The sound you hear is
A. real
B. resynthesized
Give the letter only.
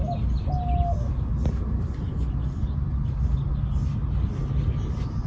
A